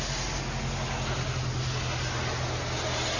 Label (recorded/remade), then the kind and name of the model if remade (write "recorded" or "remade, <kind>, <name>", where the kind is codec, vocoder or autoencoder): recorded